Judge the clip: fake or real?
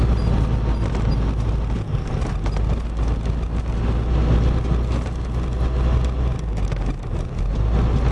real